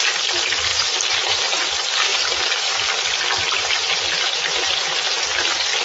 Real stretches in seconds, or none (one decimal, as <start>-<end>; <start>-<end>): 0.0-0.7; 1.3-2.1; 3.9-5.8